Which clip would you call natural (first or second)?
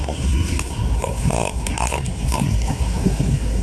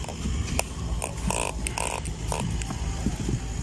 second